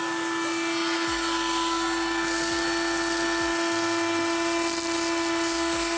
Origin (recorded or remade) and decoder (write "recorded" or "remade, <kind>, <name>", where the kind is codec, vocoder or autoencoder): recorded